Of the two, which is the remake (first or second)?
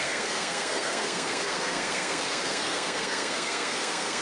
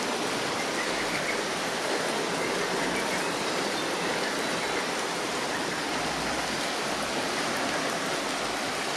first